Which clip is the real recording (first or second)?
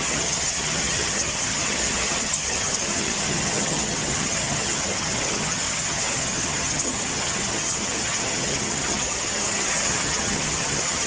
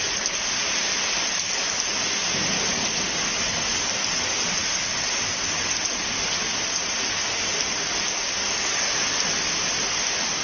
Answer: second